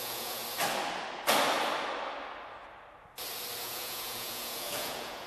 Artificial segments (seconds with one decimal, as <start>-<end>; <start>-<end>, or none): 0.0-0.4; 3.6-5.3